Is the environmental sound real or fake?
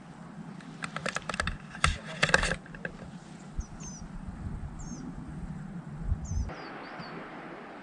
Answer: real